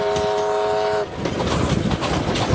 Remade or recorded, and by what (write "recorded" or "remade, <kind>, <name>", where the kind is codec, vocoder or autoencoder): recorded